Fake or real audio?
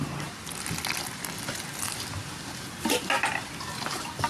real